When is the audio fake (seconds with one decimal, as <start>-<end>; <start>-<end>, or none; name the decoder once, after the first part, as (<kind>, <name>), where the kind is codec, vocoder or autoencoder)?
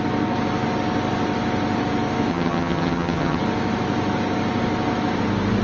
2.3-3.4 (vocoder, HiFi-GAN)